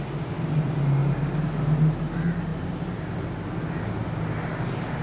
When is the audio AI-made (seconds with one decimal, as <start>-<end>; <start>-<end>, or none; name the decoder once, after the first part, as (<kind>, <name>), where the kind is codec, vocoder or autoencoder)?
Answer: none